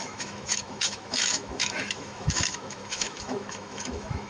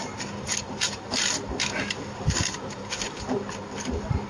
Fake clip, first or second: first